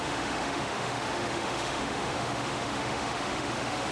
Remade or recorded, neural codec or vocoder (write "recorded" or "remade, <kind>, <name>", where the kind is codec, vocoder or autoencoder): remade, autoencoder, DAC-VAE